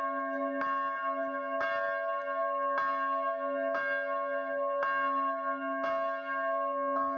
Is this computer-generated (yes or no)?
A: no